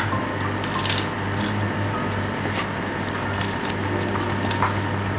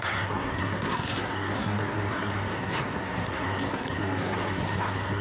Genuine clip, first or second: first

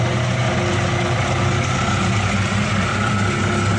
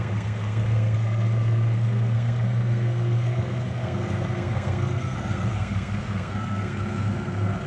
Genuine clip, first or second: first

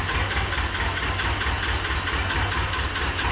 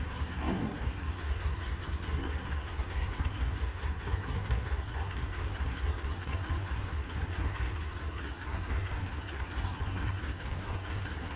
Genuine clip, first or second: first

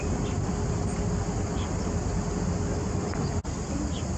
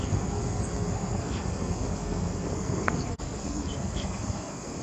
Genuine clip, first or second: first